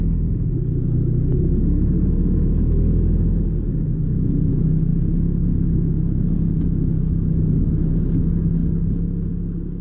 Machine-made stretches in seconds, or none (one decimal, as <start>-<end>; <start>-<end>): none